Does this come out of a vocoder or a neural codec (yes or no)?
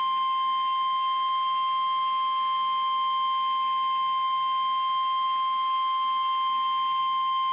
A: no